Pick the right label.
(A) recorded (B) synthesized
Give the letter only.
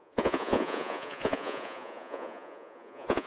B